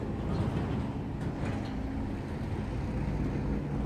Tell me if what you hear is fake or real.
real